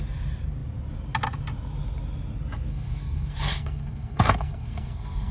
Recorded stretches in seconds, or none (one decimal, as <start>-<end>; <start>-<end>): 0.0-2.7